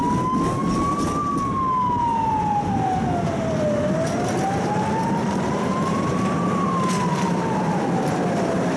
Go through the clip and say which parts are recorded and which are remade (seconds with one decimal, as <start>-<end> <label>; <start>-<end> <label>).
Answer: 0.0-5.2 recorded; 5.2-7.5 remade; 7.5-8.8 recorded